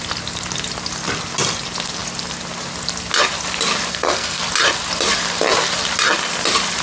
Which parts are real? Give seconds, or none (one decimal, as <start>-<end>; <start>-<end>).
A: 0.0-3.9; 4.4-6.8